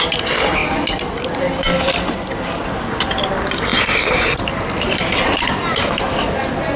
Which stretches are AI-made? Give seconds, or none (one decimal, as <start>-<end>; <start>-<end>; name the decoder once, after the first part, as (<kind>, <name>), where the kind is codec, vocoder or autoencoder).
3.7-6.1 (vocoder, BigVGAN v2)